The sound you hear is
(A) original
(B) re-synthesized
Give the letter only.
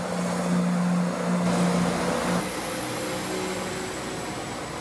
A